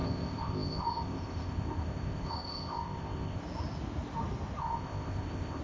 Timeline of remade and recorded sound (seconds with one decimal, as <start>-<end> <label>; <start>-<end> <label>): 0.0-3.4 remade; 3.4-4.6 recorded; 4.6-5.6 remade